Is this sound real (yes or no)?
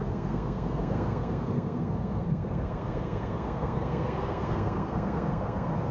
no